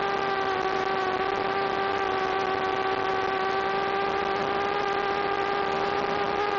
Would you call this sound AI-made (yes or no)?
no